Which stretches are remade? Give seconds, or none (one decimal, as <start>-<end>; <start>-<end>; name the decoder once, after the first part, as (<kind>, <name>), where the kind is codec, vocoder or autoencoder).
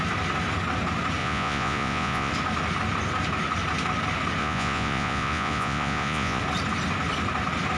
1.2-2.3 (vocoder, Vocos); 4.4-6.4